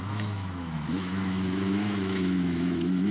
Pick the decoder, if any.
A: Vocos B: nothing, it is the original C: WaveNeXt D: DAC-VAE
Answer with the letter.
D